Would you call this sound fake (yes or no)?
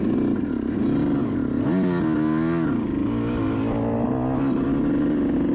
no